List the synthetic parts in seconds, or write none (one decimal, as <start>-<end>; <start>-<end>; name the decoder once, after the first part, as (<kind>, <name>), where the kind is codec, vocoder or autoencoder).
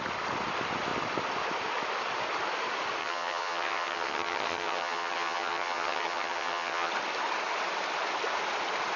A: 3.0-6.9 (vocoder, HiFi-GAN)